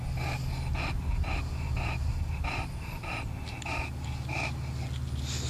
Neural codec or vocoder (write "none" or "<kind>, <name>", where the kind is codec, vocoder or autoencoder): none